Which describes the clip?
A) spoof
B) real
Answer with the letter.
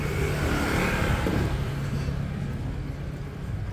B